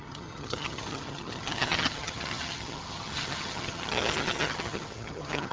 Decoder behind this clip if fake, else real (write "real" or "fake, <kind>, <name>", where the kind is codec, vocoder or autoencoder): fake, vocoder, HiFi-GAN